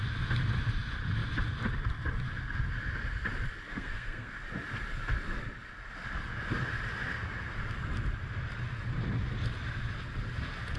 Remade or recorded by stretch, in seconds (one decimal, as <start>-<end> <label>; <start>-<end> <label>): 0.0-3.7 recorded; 3.7-4.3 remade; 4.3-10.8 recorded